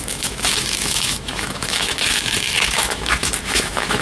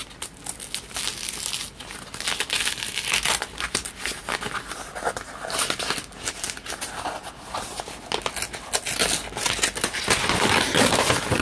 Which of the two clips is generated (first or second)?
first